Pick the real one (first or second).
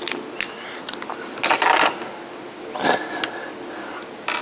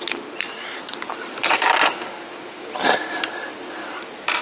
first